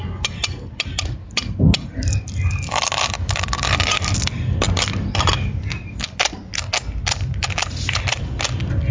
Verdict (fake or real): real